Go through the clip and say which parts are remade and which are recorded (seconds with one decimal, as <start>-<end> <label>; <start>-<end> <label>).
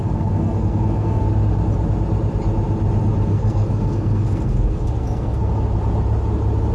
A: 0.0-1.2 remade; 1.2-3.3 recorded; 3.3-5.5 remade; 5.5-6.7 recorded